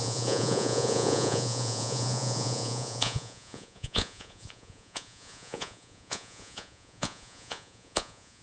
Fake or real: fake